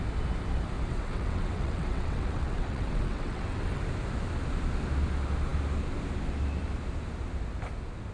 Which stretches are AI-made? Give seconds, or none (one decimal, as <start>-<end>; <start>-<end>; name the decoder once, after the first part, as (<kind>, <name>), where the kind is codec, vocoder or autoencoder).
0.9-3.8 (vocoder, WaveNeXt)